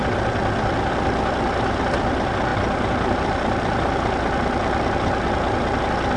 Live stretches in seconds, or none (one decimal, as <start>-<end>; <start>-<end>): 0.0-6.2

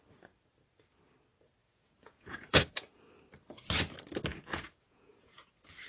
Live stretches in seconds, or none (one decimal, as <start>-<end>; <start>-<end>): 0.0-1.6; 3.0-4.3; 5.5-5.9

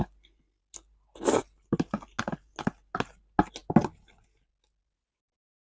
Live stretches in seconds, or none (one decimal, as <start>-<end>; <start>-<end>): 0.0-5.6

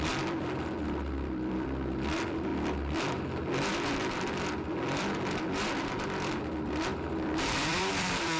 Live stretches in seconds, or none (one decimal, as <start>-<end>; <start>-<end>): none

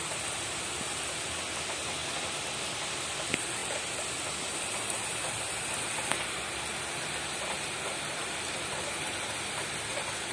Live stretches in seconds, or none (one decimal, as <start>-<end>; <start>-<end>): 0.0-10.3

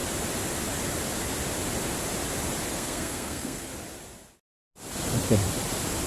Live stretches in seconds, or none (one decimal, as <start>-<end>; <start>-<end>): 0.0-2.7; 3.7-6.1

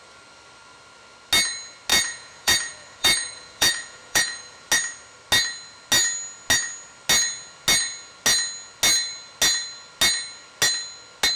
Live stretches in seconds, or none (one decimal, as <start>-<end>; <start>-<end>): 0.0-1.9; 4.7-11.4

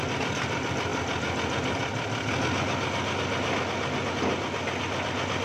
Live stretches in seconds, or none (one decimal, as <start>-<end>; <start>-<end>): 0.0-5.4